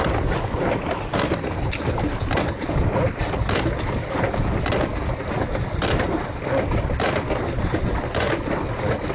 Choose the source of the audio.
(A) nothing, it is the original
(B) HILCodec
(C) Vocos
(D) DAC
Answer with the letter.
A